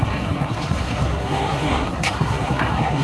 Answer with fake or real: fake